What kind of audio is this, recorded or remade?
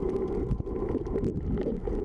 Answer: recorded